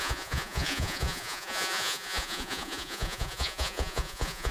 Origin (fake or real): fake